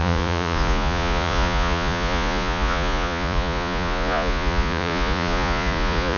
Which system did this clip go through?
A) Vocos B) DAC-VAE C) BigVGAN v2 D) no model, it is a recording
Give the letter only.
A